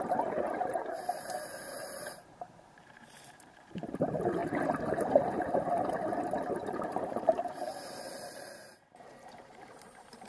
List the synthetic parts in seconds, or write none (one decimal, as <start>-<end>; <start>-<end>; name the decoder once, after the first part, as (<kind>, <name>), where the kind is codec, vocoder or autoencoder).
0.0-4.4 (vocoder, BigVGAN v2); 4.9-10.3